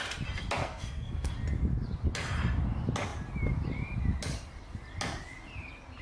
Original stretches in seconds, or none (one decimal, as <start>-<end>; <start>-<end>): 0.0-0.6; 1.3-6.0